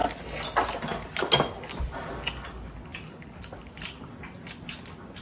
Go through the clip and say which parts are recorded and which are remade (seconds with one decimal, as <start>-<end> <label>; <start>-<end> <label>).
0.0-5.2 recorded